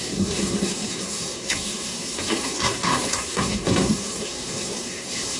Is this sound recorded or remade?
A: remade